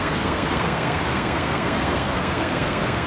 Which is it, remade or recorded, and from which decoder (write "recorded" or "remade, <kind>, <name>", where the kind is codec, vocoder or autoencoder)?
remade, codec, SNAC